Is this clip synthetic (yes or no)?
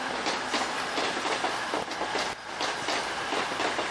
no